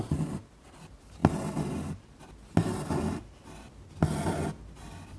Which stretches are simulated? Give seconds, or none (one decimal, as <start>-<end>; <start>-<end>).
none